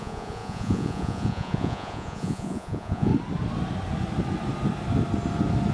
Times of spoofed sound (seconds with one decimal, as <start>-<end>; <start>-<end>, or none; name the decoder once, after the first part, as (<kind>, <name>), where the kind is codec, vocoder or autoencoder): 0.0-3.1 (vocoder, Vocos)